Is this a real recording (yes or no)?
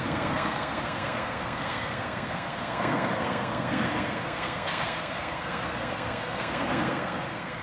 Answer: no